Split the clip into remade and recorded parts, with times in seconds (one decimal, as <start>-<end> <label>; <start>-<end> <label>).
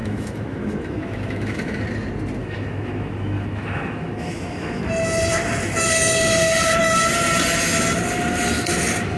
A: 0.0-1.8 remade; 1.8-2.4 recorded; 2.4-4.8 remade; 4.8-9.2 recorded